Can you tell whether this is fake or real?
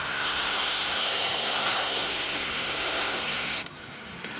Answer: fake